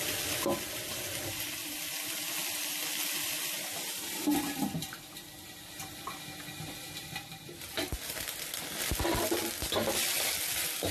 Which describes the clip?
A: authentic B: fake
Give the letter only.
A